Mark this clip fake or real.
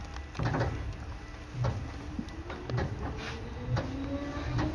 real